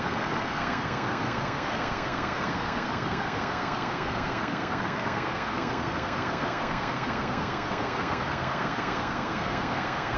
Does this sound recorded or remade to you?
remade